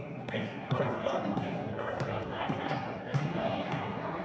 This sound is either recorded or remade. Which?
remade